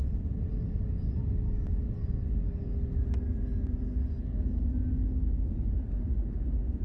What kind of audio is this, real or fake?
real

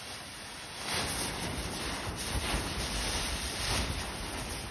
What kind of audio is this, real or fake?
real